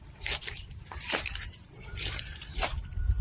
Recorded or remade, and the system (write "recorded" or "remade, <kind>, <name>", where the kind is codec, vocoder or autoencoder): remade, vocoder, BigVGAN v2